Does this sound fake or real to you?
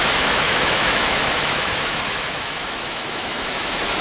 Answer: fake